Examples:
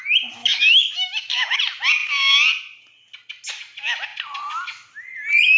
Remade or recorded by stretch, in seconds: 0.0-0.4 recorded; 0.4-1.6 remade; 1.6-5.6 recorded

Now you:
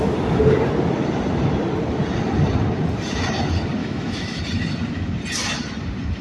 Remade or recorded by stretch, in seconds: 0.0-3.8 recorded; 3.8-4.4 remade; 4.4-6.2 recorded

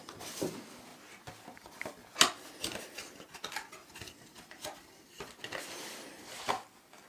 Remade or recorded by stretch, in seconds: 0.0-7.1 recorded

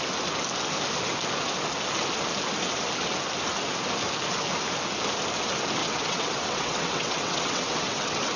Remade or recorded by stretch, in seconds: 0.0-5.8 recorded; 5.8-8.4 remade

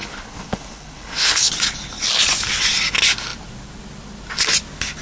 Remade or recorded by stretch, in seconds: 0.0-1.5 remade; 1.5-5.0 recorded

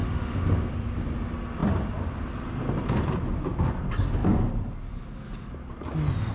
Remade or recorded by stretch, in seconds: 0.0-0.7 remade; 0.7-6.3 recorded

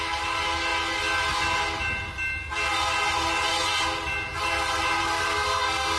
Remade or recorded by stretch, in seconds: 0.0-5.0 recorded; 5.0-6.0 remade